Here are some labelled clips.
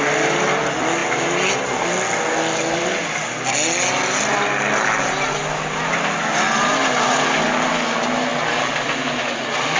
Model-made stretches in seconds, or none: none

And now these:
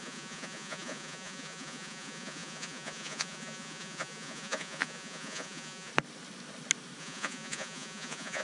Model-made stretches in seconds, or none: 0.0-5.9; 7.0-8.4

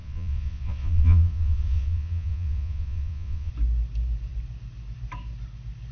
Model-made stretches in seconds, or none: 0.0-3.5

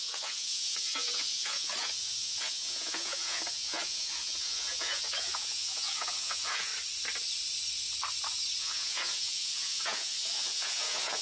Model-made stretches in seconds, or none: 0.0-6.7; 8.6-11.2

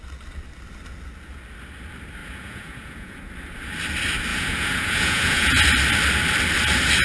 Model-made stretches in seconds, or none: 2.2-3.2; 4.3-5.6

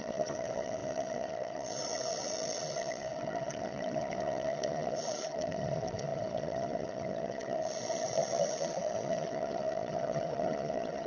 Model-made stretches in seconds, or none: 0.0-11.1

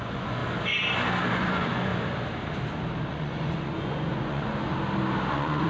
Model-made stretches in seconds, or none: 0.0-0.4; 1.3-1.9; 3.1-4.7; 5.3-5.7

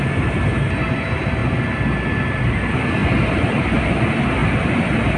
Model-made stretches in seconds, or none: none